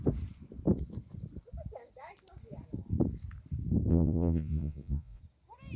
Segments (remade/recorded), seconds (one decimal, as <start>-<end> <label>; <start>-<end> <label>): 0.0-3.9 recorded; 3.9-5.2 remade; 5.2-5.8 recorded